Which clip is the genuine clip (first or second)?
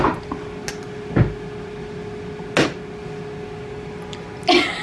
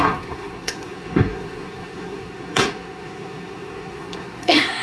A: first